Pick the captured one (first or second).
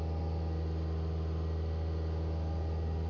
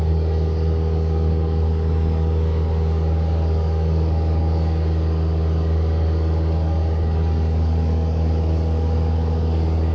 first